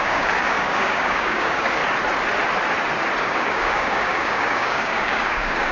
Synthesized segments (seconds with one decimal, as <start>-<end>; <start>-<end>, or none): 0.0-1.8; 3.2-5.7